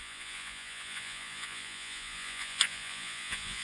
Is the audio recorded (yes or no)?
no